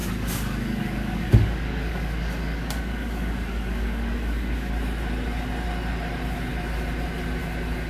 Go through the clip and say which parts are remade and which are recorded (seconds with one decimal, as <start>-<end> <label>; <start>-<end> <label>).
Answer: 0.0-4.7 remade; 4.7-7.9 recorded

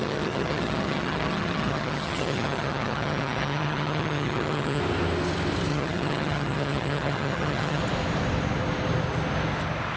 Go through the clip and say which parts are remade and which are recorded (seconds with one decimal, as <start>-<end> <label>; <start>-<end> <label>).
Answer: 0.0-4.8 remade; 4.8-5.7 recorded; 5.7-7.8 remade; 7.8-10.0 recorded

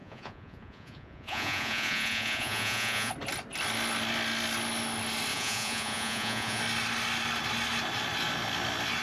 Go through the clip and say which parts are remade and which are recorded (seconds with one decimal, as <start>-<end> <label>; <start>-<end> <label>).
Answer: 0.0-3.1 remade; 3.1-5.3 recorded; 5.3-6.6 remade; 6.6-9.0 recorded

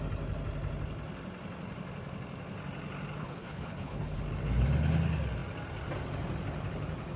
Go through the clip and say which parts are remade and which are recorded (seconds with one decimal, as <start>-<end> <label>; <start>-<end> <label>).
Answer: 0.0-3.2 recorded; 3.2-4.2 remade; 4.2-7.2 recorded